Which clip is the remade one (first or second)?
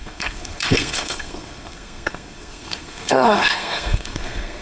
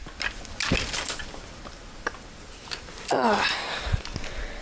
first